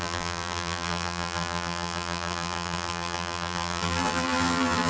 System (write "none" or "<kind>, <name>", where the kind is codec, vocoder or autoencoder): vocoder, BigVGAN v2